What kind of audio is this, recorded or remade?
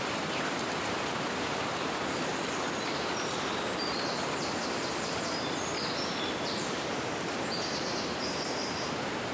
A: remade